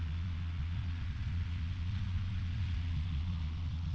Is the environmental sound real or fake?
fake